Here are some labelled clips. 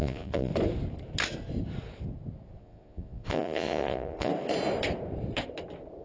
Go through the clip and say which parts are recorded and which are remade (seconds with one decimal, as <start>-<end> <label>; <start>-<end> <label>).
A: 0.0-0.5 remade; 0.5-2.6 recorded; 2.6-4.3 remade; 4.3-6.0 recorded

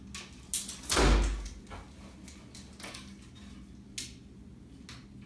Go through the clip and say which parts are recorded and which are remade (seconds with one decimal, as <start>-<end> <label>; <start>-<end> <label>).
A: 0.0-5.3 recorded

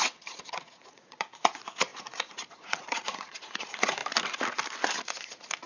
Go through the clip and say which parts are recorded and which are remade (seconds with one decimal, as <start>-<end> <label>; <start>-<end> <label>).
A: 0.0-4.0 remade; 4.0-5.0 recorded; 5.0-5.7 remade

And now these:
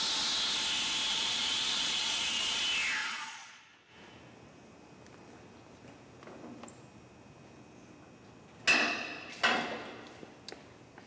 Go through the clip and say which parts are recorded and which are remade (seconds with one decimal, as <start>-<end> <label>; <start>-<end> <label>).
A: 0.0-1.1 recorded; 1.1-2.6 remade; 2.6-3.0 recorded; 3.0-3.6 remade; 3.6-11.1 recorded

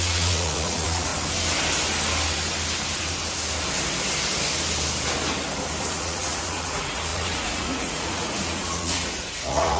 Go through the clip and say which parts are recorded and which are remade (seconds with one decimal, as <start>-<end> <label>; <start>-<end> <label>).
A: 0.0-1.1 remade; 1.1-5.8 recorded; 5.8-9.8 remade

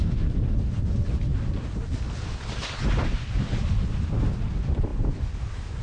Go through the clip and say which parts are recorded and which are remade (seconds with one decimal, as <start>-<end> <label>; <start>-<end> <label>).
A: 0.0-5.8 recorded